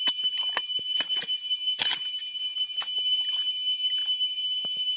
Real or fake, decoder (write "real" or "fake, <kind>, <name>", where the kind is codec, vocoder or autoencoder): real